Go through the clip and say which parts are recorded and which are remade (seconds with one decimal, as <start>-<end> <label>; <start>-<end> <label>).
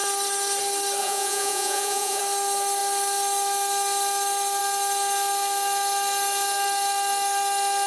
0.0-1.0 recorded; 1.0-2.2 remade; 2.2-7.9 recorded